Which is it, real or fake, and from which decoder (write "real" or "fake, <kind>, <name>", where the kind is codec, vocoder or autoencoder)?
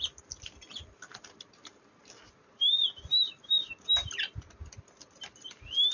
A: real